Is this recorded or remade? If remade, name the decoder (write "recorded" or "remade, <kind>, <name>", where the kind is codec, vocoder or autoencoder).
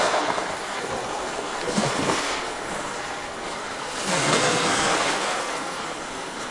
remade, codec, SNAC